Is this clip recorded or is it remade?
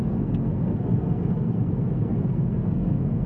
remade